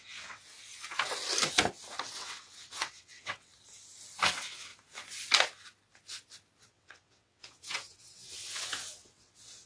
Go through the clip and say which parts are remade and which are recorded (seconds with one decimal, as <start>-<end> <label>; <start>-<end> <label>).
0.0-0.5 remade; 0.5-2.1 recorded; 2.1-3.5 remade; 3.5-4.3 recorded; 4.3-4.7 remade; 4.7-6.7 recorded; 6.7-9.7 remade